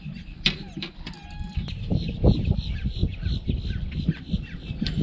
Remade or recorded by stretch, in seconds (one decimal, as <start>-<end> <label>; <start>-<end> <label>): 0.0-5.0 recorded